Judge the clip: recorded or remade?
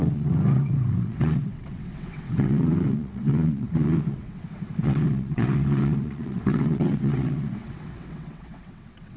remade